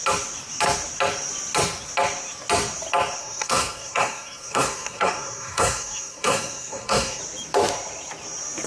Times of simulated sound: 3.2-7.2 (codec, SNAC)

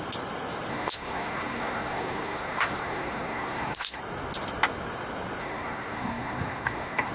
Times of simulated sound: 0.7-4.0 (codec, SNAC); 5.4-7.1

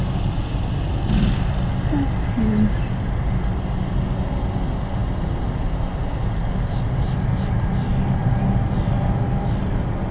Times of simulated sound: none

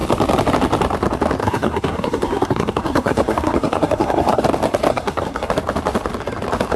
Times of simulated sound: 1.4-4.4 (codec, SNAC); 4.9-5.5

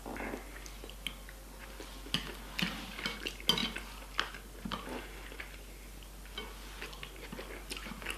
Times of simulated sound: none

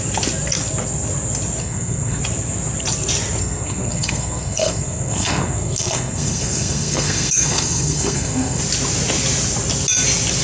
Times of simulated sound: 1.6-2.2 (codec, SNAC); 3.4-8.6